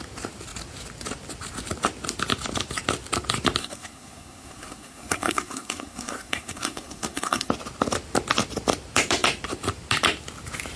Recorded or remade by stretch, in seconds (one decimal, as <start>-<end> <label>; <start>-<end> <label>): 0.0-3.6 recorded; 3.6-7.5 remade; 7.5-10.8 recorded